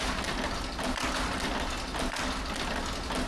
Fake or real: real